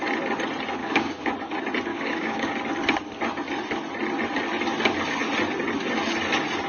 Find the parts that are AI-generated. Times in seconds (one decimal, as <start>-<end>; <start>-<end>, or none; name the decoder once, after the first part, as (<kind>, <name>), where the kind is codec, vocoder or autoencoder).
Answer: 0.8-1.3 (codec, DAC); 1.9-2.5